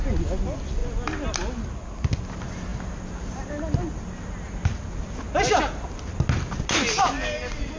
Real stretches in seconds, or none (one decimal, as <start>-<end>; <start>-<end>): 0.0-7.8